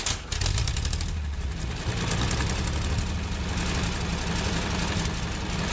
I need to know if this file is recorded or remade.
recorded